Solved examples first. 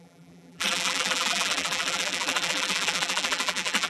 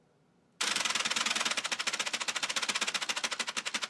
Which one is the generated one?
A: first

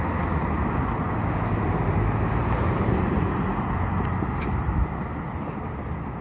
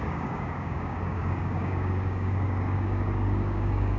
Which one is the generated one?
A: second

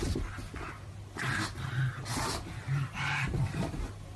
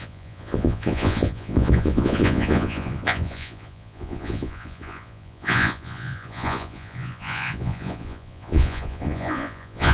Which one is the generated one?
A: second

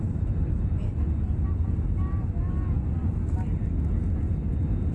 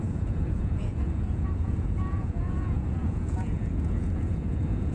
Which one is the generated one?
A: second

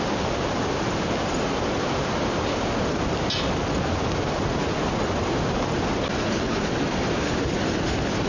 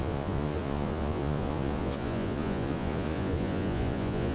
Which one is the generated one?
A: second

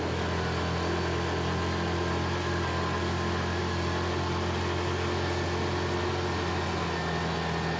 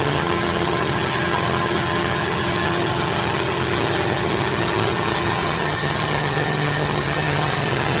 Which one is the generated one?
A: second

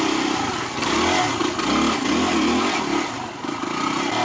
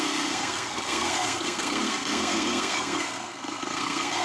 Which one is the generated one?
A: second